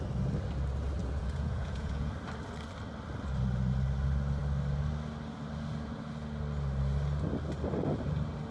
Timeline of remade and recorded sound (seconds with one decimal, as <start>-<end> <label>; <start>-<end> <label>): 0.0-1.0 recorded; 1.0-2.1 remade; 2.1-8.5 recorded